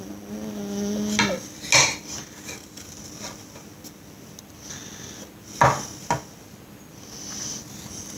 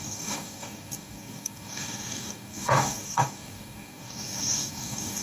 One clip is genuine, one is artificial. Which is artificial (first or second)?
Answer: second